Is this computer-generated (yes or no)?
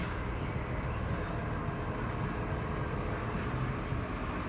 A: no